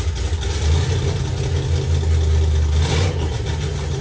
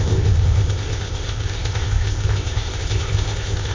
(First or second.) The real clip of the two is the first